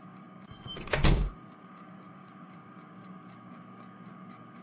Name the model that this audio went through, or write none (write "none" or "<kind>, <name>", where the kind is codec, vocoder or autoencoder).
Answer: codec, DAC